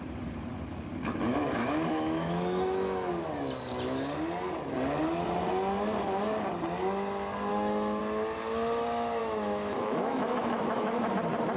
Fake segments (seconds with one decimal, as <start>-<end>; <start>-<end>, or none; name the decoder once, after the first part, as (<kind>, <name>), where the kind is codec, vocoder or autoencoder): 1.3-3.1 (autoencoder, DAC-VAE); 7.5-8.0; 9.2-11.1